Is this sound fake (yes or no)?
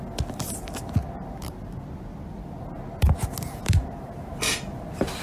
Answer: no